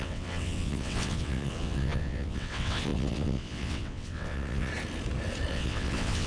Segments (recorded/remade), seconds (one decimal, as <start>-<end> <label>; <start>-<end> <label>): 0.0-4.7 remade; 4.7-5.5 recorded; 5.5-6.3 remade